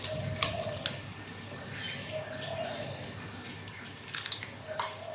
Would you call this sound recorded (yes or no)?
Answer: yes